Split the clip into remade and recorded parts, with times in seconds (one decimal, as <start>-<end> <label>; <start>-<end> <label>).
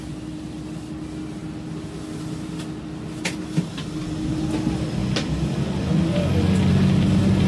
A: 0.0-7.5 recorded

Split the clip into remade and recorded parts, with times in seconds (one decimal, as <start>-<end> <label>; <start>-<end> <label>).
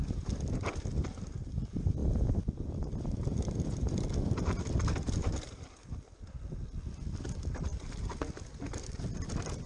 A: 0.0-5.2 remade; 5.2-6.8 recorded; 6.8-7.7 remade; 7.7-8.6 recorded; 8.6-9.7 remade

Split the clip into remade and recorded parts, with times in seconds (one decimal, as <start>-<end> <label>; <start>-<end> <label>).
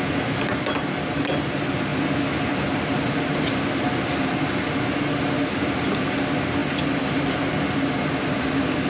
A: 0.0-8.9 recorded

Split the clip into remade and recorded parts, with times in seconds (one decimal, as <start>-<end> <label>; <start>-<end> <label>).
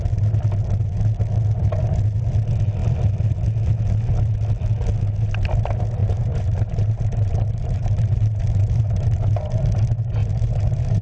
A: 0.0-6.0 recorded; 6.0-9.3 remade; 9.3-10.2 recorded; 10.2-11.0 remade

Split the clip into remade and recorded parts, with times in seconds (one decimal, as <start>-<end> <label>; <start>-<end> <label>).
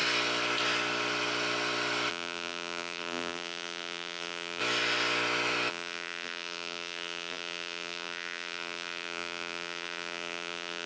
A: 0.0-2.1 recorded; 2.1-4.6 remade; 4.6-5.7 recorded; 5.7-10.9 remade